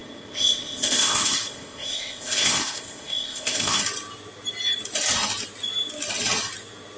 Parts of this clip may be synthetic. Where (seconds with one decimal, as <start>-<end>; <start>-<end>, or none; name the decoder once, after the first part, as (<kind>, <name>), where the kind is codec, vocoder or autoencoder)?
0.0-3.8 (codec, ZipCodec)